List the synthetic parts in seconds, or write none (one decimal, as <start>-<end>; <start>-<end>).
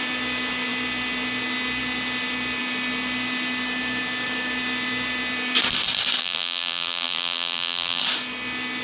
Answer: 6.2-8.0